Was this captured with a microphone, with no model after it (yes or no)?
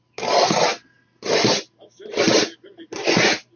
yes